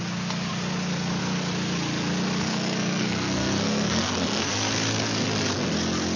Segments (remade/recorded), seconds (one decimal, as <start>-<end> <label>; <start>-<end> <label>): 0.0-2.4 recorded; 2.4-4.5 remade; 4.5-6.2 recorded